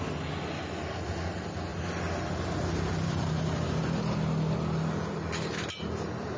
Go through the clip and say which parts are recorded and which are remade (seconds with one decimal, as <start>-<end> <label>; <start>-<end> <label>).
0.0-6.4 recorded